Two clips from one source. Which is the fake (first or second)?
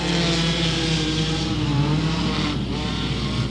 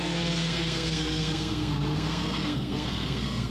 second